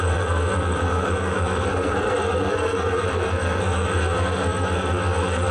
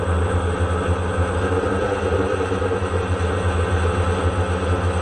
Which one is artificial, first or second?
first